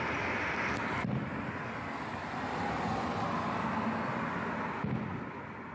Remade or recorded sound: recorded